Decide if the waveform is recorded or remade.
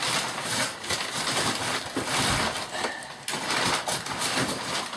recorded